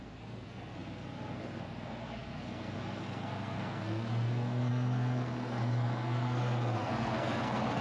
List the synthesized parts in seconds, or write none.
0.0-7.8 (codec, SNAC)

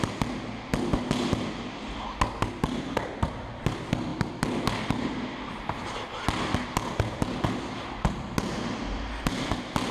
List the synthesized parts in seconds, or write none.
none

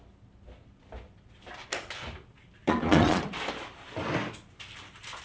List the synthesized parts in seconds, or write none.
2.6-3.2 (vocoder, Vocos)

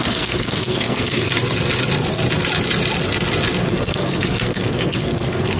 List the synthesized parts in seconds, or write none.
0.0-1.3 (codec, SNAC); 3.7-5.6

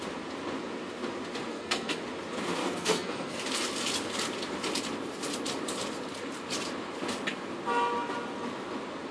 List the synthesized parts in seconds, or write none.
1.5-2.0 (codec, SNAC); 2.6-3.4

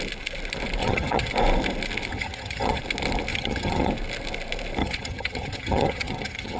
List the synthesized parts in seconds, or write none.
0.8-1.3 (vocoder, HiFi-GAN); 2.1-2.8; 3.3-3.9; 4.8-6.6

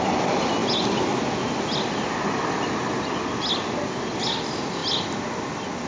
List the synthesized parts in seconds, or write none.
none